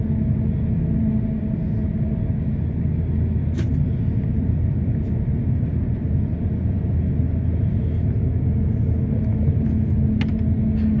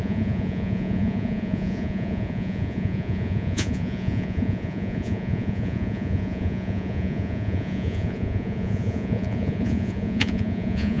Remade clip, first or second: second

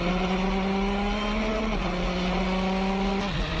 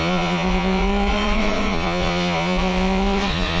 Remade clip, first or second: second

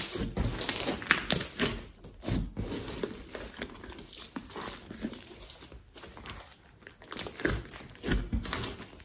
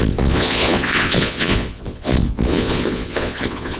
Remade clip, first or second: second